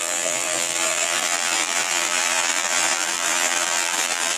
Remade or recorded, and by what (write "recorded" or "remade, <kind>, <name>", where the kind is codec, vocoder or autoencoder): remade, vocoder, BigVGAN v2